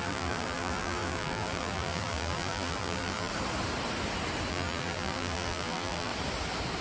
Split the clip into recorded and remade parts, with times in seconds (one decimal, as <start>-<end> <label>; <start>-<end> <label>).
0.0-3.3 remade; 3.3-4.5 recorded; 4.5-6.1 remade; 6.1-6.8 recorded